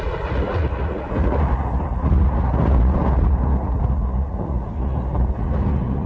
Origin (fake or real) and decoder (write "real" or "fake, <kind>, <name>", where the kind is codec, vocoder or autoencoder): fake, vocoder, Vocos